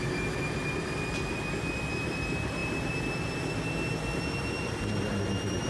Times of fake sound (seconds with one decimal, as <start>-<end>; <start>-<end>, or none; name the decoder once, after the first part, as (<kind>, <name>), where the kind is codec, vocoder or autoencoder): none